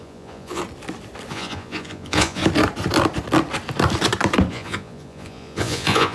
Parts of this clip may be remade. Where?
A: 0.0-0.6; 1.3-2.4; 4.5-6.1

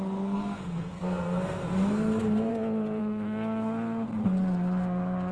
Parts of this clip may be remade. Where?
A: 0.0-2.5; 3.0-5.3

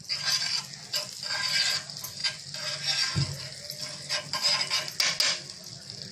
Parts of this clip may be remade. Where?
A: none

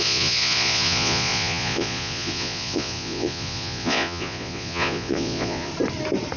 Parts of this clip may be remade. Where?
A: 0.0-5.7